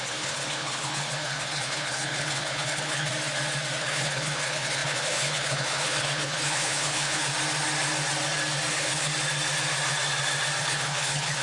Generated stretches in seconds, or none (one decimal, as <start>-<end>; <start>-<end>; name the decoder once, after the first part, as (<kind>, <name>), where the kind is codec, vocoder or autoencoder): 0.0-3.1 (codec, HILCodec); 3.8-7.3; 8.7-9.1; 10.6-11.4